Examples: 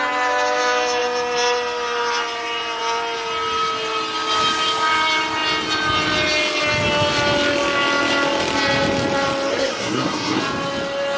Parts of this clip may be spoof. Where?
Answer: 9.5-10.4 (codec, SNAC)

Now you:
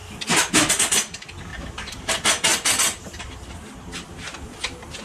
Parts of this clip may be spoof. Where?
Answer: 1.5-2.0 (vocoder, BigVGAN v2); 2.5-3.3

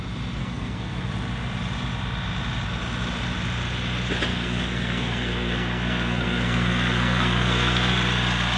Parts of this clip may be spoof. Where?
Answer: 0.4-1.1 (codec, SNAC); 4.3-7.9

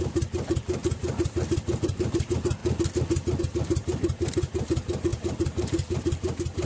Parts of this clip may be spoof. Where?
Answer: 0.0-2.6 (vocoder, BigVGAN v2); 3.4-6.7

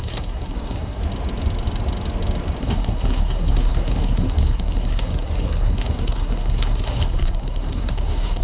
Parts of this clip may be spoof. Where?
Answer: 0.0-1.0 (codec, SNAC); 2.6-8.4